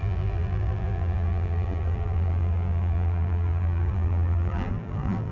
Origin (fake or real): fake